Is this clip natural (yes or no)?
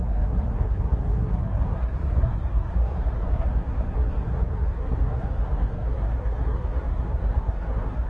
no